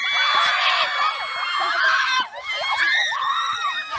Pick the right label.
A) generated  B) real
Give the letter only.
B